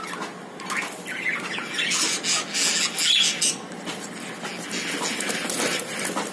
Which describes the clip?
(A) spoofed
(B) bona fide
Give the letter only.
B